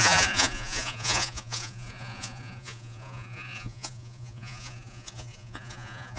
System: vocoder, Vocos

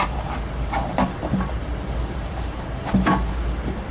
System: none